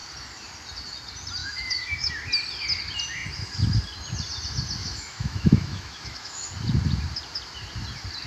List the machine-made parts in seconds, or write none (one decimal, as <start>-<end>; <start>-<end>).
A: 1.4-2.1; 4.8-6.5